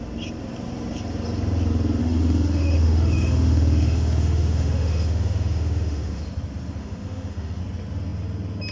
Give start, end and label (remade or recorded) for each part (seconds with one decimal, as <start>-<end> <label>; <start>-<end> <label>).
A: 0.0-2.0 recorded; 2.0-6.2 remade; 6.2-6.8 recorded; 6.8-7.6 remade; 7.6-8.7 recorded